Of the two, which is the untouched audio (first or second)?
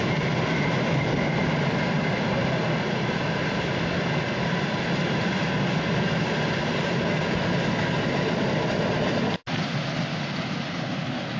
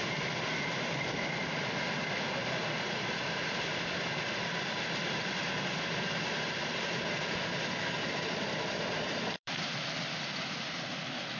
first